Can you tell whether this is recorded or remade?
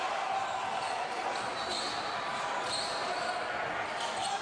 recorded